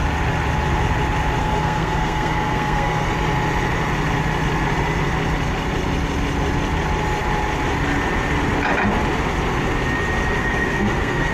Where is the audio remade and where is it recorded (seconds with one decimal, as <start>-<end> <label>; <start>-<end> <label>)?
0.0-1.4 recorded; 1.4-3.1 remade; 3.1-10.4 recorded; 10.4-11.3 remade